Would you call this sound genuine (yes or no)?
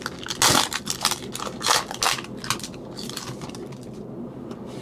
yes